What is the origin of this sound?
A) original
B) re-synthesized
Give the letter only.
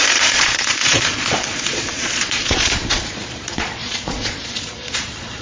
B